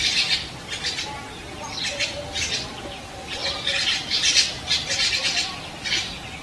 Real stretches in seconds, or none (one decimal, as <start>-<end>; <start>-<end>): 0.0-6.4

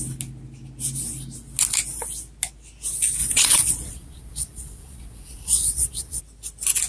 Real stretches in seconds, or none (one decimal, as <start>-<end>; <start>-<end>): 0.0-3.2; 6.2-6.9

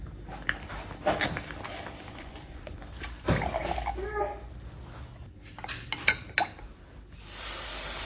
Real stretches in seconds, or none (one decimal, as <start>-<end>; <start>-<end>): 0.0-2.1; 2.8-8.1

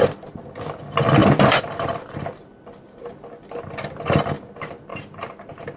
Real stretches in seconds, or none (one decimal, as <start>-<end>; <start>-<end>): 0.0-1.2; 1.9-4.9

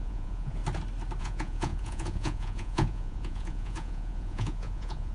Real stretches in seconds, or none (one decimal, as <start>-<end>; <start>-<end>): 0.6-1.2

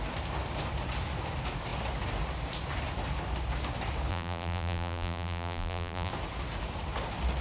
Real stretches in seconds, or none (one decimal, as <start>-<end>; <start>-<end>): 0.0-4.1; 6.1-7.4

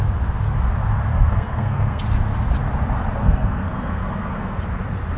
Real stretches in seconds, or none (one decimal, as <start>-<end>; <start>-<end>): 0.0-1.1; 2.0-3.2; 4.6-5.2